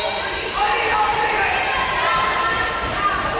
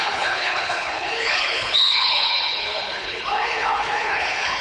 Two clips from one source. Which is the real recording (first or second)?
first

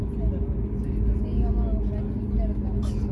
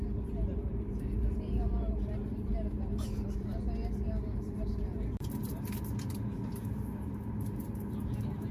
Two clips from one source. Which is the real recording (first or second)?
first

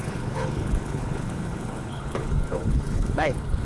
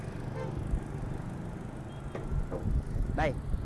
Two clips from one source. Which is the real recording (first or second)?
second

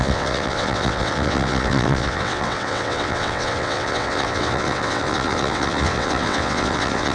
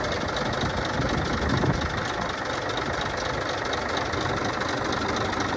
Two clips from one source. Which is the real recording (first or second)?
second